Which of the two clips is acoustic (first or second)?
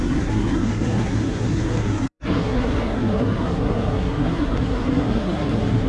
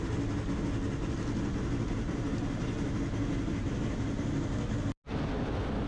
second